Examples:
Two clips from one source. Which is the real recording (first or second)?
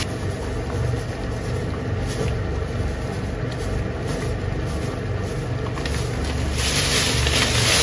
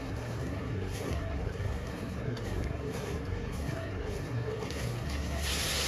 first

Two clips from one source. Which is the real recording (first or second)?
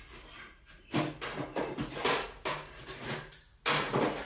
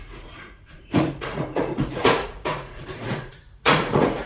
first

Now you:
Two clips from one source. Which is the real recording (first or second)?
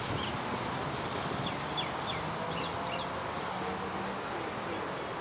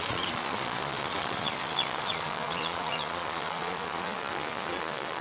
first